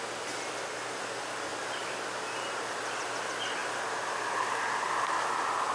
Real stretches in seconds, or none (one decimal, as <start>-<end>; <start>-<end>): 0.0-5.7

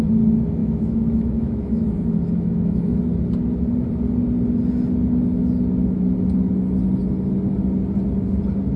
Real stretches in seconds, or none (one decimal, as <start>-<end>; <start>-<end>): 0.0-0.6; 3.0-8.8